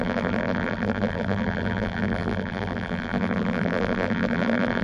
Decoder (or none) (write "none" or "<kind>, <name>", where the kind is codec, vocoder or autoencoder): vocoder, BigVGAN v2